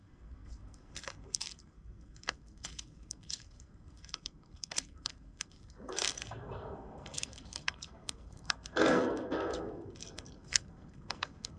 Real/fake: fake